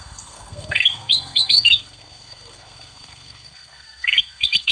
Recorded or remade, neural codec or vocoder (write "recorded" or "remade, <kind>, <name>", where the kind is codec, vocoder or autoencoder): remade, codec, SNAC